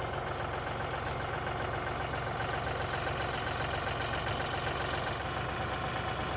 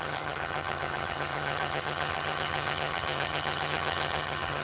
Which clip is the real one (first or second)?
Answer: first